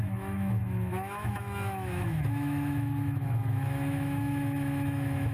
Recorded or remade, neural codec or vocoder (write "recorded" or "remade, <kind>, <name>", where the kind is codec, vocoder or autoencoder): remade, autoencoder, DAC-VAE